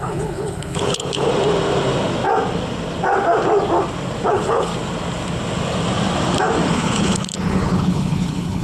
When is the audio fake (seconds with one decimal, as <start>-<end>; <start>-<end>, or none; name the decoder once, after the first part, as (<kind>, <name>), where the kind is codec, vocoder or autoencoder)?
0.0-1.3 (codec, HILCodec); 4.3-4.7; 6.7-8.6